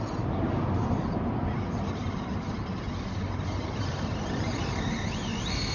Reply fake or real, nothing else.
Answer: real